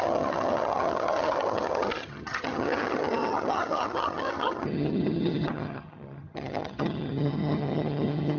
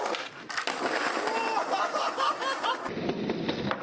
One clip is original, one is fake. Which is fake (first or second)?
first